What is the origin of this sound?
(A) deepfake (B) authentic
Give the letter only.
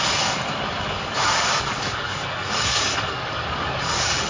A